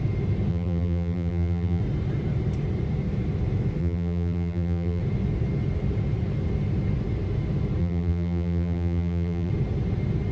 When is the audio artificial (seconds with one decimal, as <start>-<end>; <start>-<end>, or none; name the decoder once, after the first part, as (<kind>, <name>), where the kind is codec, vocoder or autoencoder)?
0.5-1.8 (vocoder, BigVGAN v2); 3.8-5.0; 7.8-9.5